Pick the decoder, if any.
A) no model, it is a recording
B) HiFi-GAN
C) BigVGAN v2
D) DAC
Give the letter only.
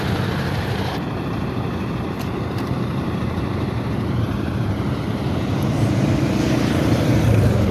C